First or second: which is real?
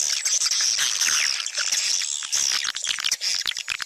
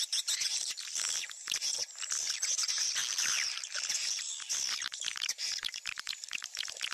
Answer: first